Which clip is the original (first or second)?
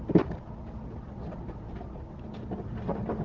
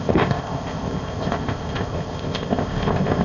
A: first